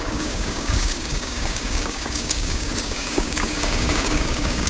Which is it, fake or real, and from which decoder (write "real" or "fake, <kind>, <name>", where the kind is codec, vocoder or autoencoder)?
fake, codec, DAC